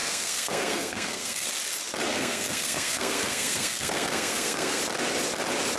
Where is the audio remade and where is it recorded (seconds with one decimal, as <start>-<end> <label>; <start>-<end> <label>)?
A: 0.0-1.5 remade; 1.5-2.1 recorded; 2.1-4.8 remade; 4.8-5.8 recorded